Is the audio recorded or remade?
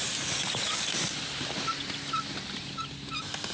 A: recorded